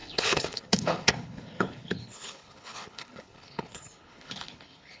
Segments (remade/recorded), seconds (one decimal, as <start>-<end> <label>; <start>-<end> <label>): 0.0-5.0 remade